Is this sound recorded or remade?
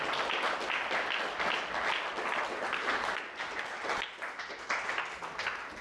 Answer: recorded